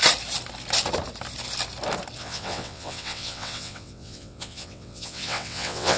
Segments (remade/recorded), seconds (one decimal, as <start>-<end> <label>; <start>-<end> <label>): 0.0-2.2 recorded; 2.2-6.0 remade